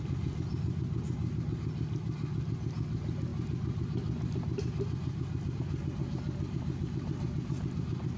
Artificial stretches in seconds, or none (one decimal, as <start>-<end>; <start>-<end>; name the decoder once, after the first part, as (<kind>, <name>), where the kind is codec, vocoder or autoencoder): none